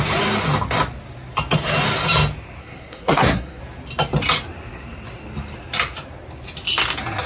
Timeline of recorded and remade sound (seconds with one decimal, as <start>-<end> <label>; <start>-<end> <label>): 0.0-2.6 recorded; 2.6-3.6 remade; 3.6-7.3 recorded